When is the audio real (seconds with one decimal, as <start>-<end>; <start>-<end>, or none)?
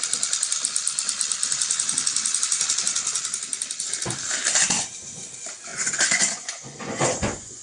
0.0-5.7